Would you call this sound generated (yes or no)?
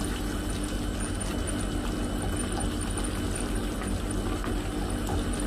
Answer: no